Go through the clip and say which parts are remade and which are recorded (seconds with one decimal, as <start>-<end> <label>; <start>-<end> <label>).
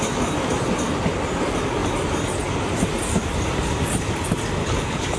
0.0-4.6 recorded; 4.6-5.2 remade